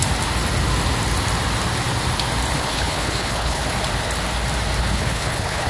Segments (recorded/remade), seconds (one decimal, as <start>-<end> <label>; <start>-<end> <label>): 0.0-2.5 recorded; 2.5-3.6 remade; 3.6-4.8 recorded; 4.8-5.7 remade